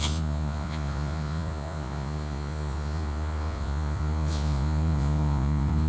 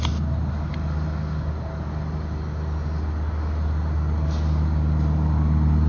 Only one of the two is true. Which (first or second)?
second